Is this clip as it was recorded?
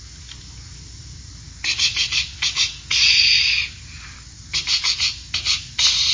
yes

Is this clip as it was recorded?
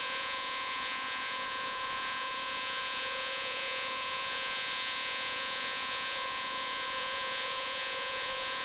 no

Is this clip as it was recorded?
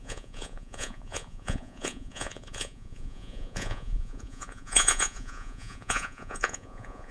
no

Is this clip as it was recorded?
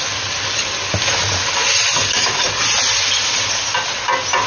yes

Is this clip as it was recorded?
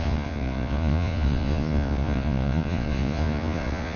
no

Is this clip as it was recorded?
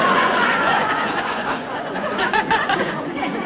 no